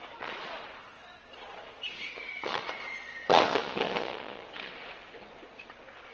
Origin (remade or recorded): remade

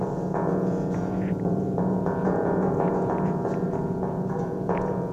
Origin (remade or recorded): remade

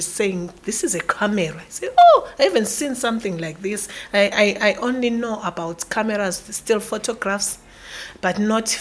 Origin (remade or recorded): recorded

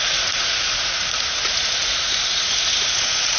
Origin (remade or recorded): remade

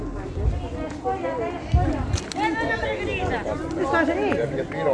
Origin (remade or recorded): recorded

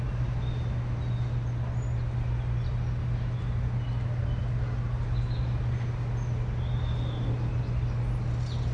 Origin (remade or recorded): recorded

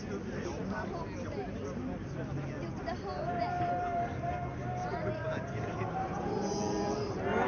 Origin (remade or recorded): recorded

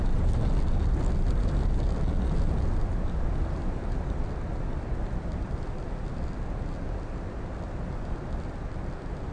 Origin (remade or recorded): recorded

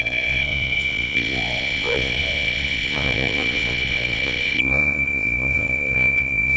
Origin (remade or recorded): remade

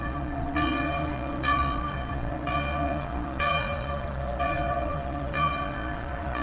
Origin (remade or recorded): remade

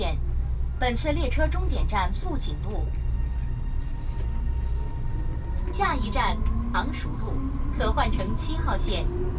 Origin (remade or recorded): recorded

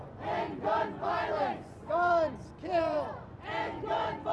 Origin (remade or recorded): remade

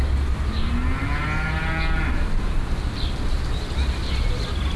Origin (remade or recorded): recorded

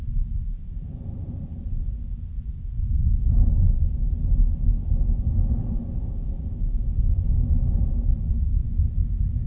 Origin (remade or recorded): remade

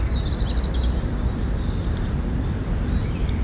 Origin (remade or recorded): recorded